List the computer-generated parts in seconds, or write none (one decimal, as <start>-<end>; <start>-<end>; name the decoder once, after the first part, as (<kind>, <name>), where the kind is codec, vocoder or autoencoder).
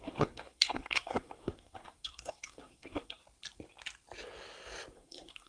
0.0-3.2 (codec, SNAC); 4.9-5.5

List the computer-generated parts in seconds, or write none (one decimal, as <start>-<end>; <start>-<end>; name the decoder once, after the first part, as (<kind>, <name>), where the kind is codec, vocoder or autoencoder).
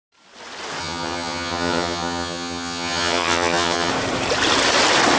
0.8-3.9 (vocoder, HiFi-GAN)